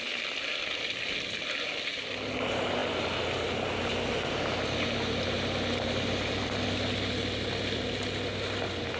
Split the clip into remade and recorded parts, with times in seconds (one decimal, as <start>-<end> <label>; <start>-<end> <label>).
0.0-9.0 recorded